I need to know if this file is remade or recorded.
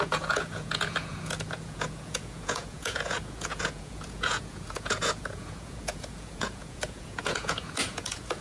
remade